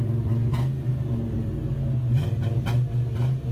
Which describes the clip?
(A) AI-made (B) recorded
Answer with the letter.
B